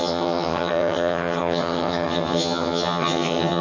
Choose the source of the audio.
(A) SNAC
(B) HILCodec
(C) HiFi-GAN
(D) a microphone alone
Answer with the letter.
C